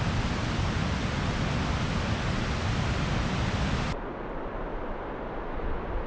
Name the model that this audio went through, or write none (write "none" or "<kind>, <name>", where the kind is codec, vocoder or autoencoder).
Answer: none